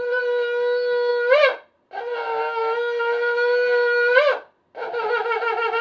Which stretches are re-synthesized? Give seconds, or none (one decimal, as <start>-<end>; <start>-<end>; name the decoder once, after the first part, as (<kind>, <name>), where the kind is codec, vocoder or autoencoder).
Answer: none